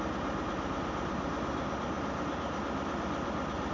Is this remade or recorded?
recorded